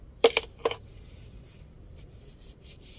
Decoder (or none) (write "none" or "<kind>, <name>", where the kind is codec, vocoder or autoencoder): vocoder, BigVGAN v2